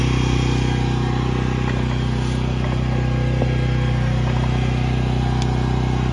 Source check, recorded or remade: recorded